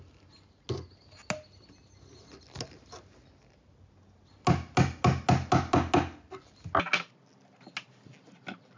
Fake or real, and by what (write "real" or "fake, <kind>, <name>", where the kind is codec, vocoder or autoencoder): real